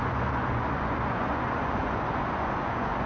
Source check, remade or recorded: remade